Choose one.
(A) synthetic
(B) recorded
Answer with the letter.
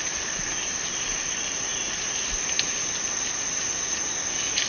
B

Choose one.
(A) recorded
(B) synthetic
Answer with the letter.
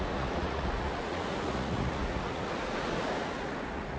B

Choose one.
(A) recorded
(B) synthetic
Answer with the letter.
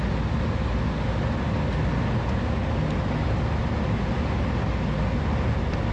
A